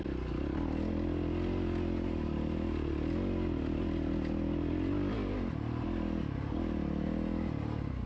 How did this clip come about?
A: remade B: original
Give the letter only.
B